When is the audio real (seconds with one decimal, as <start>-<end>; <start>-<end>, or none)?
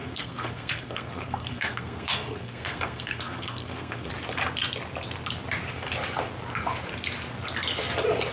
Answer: 4.1-8.3